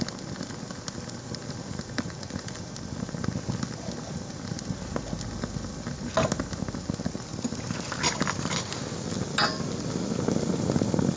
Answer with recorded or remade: recorded